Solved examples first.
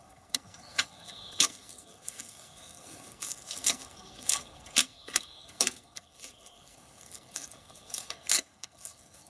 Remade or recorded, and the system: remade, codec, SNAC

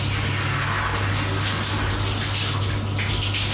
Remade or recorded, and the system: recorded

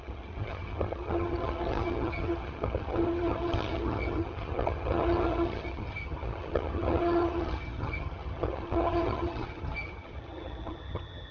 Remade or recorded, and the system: remade, vocoder, HiFi-GAN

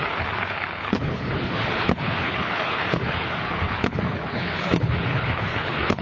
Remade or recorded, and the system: remade, codec, HILCodec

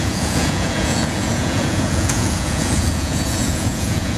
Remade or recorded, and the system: remade, vocoder, Vocos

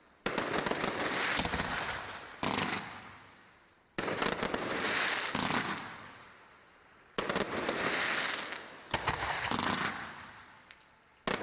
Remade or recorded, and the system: recorded